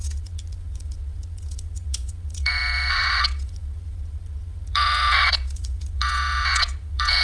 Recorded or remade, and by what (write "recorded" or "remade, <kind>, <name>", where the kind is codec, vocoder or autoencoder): remade, vocoder, Vocos